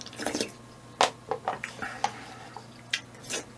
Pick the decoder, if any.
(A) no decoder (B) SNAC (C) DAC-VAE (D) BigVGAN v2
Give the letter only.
A